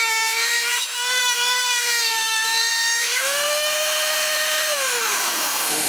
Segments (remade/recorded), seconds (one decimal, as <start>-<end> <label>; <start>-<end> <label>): 0.0-5.9 remade